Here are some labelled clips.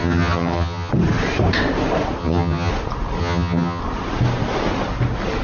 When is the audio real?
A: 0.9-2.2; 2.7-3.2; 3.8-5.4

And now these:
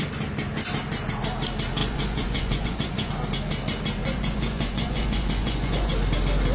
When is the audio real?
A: 0.0-1.8; 3.1-4.0; 5.9-6.5

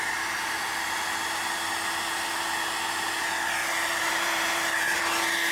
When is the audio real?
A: 0.0-3.6; 5.0-5.5

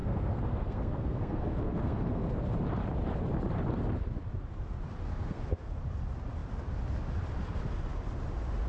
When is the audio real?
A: 2.4-5.1; 5.7-8.7